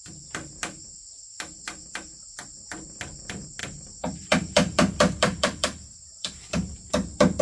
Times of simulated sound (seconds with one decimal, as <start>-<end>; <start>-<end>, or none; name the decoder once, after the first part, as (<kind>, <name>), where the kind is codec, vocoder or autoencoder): 3.6-7.4 (vocoder, BigVGAN v2)